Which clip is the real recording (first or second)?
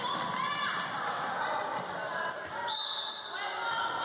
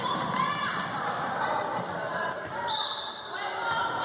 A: first